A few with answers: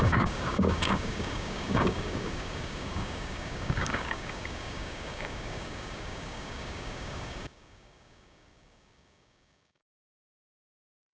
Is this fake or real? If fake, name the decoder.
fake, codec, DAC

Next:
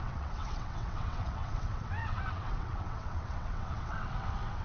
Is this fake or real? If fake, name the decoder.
fake, vocoder, WaveNeXt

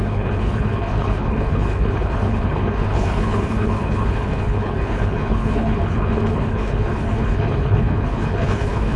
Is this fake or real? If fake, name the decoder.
fake, codec, HILCodec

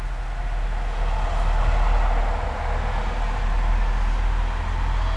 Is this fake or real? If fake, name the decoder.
real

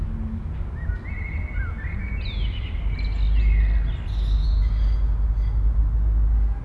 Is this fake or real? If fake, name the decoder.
real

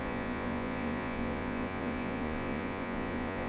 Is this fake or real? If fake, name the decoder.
fake, vocoder, Vocos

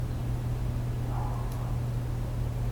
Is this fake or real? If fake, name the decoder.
real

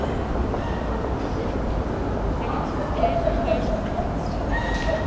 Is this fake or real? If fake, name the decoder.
real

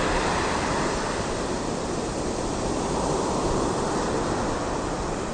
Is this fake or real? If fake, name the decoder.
fake, vocoder, BigVGAN v2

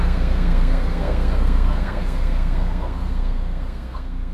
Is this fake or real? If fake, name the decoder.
fake, codec, SNAC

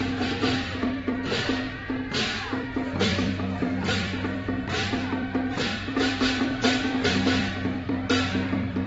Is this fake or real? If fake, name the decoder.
fake, vocoder, BigVGAN v2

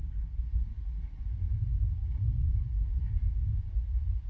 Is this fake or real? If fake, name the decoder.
real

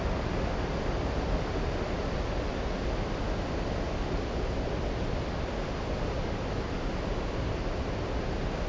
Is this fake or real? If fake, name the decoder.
real